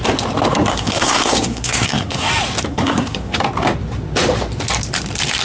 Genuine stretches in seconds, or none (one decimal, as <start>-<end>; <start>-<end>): 0.0-0.7; 2.3-2.7; 3.4-5.4